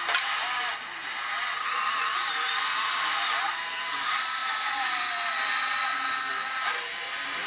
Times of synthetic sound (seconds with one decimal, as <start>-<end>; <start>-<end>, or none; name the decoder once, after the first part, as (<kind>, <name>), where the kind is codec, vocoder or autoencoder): 0.0-1.0 (vocoder, BigVGAN v2); 1.6-4.4; 6.3-7.5